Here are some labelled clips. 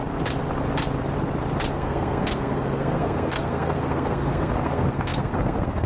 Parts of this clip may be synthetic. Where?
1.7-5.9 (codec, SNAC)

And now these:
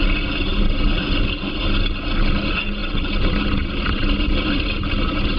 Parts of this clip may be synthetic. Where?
none

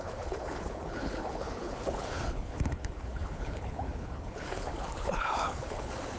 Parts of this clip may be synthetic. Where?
0.0-6.2 (codec, HILCodec)

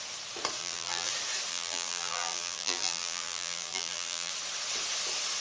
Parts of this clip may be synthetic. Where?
0.6-1.1 (vocoder, BigVGAN v2); 1.5-4.3

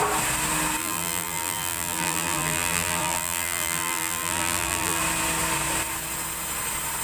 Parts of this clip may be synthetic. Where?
0.8-5.0 (vocoder, BigVGAN v2)

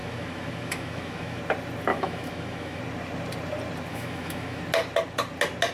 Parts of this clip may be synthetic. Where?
0.0-1.4 (autoencoder, DAC-VAE); 1.9-2.8; 3.9-4.6

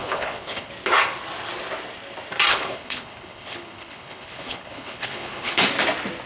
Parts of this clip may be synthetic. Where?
0.0-0.7 (codec, HILCodec); 2.5-5.6

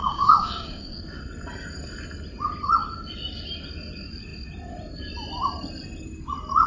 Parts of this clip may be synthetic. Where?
0.0-1.0 (codec, DAC)